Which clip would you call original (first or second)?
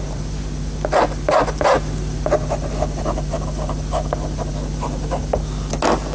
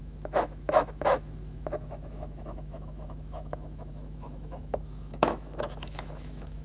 first